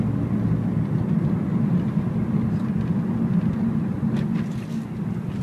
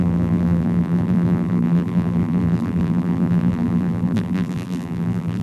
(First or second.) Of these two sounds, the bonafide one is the first